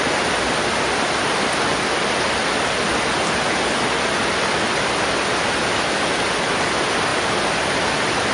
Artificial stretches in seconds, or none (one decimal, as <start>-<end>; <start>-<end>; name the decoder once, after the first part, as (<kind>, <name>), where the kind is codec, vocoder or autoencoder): none